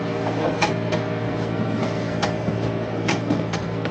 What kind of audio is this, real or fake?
fake